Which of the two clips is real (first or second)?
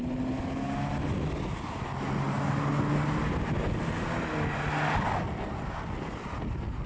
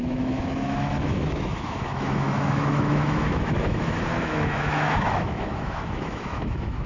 first